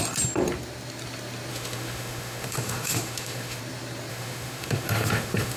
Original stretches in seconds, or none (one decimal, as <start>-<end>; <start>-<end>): 0.0-1.5; 3.6-4.1